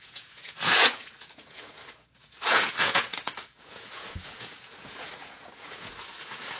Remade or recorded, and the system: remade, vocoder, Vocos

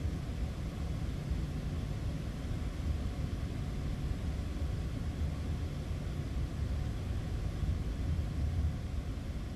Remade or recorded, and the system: recorded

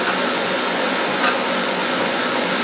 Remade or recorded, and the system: remade, vocoder, Vocos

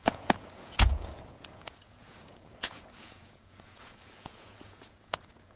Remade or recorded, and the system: remade, vocoder, Vocos